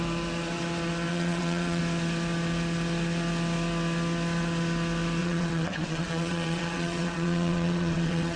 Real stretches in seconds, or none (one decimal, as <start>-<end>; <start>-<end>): 0.0-1.1; 1.8-5.2